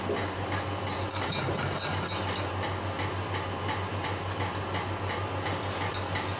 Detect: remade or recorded recorded